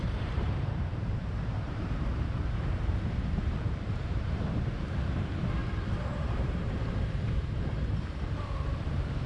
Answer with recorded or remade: remade